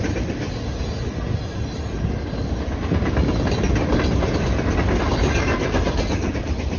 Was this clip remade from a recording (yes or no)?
no